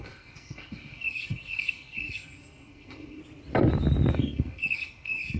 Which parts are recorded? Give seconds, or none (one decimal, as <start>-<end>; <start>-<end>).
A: 3.2-4.1